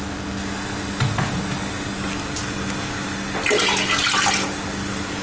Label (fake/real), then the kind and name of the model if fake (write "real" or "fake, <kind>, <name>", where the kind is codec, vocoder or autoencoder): real